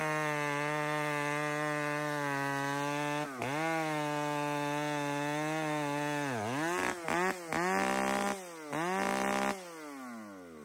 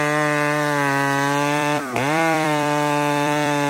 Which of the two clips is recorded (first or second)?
first